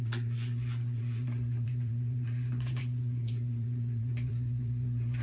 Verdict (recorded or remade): remade